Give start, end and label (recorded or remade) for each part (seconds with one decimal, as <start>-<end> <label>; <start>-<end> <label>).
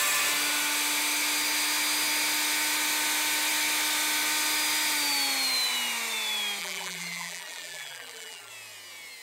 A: 0.0-6.6 recorded; 6.6-8.5 remade; 8.5-9.2 recorded